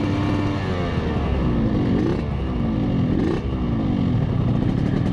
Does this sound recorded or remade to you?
recorded